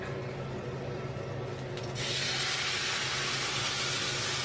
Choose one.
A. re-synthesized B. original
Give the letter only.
B